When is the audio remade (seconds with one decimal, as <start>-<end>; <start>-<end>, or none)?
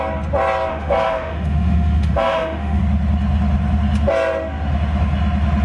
0.7-2.8